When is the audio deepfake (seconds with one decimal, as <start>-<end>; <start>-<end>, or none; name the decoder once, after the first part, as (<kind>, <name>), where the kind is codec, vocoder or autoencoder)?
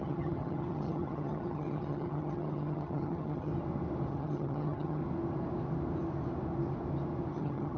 0.0-3.5 (vocoder, HiFi-GAN); 4.1-5.0; 7.3-7.8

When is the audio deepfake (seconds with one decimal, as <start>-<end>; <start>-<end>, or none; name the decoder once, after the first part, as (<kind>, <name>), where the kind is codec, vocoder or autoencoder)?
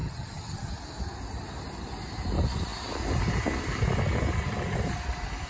0.0-0.7 (vocoder, HiFi-GAN)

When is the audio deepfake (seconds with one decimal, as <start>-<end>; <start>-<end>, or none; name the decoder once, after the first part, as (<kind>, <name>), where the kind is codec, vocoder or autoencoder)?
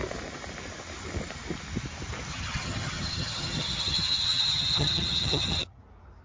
2.3-5.8 (vocoder, HiFi-GAN)